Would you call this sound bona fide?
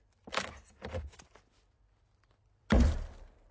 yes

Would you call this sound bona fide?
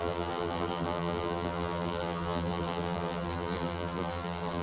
no